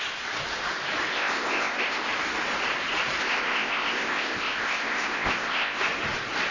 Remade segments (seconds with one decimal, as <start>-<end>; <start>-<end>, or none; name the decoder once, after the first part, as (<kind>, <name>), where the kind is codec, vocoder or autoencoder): 1.1-2.1 (codec, ZipCodec); 3.2-5.8